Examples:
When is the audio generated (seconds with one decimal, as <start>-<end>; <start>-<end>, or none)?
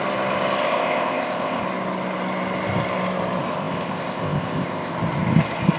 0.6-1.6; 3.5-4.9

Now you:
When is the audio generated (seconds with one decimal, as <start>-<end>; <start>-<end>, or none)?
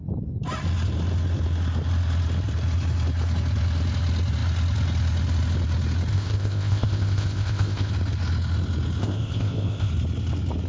6.1-7.9; 9.0-9.9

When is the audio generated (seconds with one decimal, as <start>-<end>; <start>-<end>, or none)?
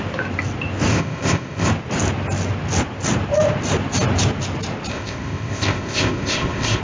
0.9-1.7; 4.9-6.8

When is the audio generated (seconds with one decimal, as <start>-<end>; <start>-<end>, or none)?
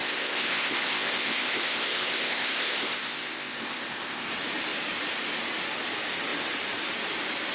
0.0-4.3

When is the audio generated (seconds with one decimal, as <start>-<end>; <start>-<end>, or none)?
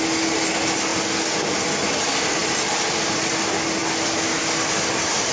none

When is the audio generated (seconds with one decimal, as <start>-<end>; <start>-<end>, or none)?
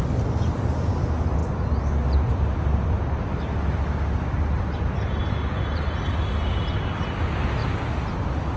none